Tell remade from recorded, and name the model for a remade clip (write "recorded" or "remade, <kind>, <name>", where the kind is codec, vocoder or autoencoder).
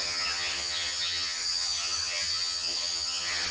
remade, vocoder, HiFi-GAN